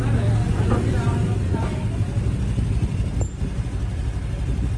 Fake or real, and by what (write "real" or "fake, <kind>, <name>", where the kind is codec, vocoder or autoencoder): real